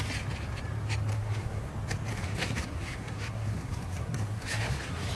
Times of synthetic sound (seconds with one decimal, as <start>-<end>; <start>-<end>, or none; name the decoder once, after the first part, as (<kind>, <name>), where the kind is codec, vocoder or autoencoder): 1.1-1.7 (codec, SNAC); 2.1-5.1